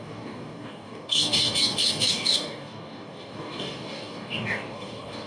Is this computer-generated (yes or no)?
yes